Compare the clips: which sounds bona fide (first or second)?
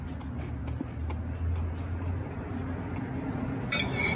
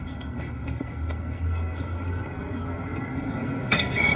first